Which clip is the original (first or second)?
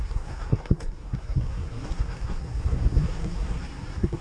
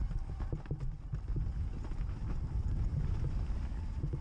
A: second